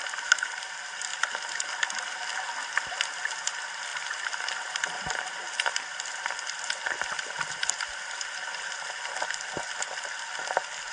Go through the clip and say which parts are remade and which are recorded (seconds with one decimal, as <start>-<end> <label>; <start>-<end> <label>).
0.0-3.9 recorded; 3.9-8.9 remade; 8.9-10.9 recorded